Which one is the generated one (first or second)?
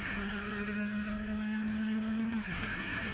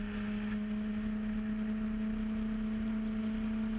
first